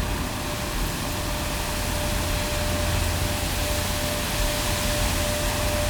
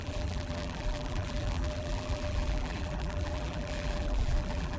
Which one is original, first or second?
first